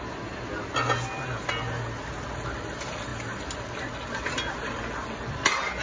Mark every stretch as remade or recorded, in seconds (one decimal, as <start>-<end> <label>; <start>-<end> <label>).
0.0-5.8 recorded